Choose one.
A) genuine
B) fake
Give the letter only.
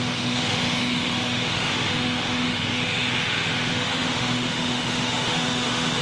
B